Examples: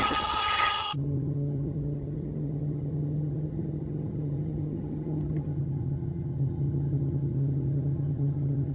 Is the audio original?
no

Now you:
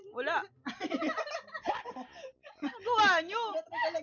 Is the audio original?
yes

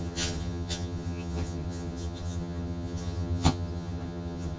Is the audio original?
no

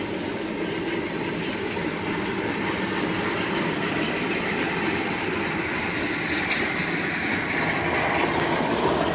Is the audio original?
yes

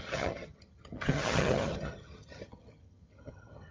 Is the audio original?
no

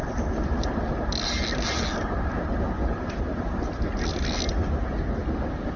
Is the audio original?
yes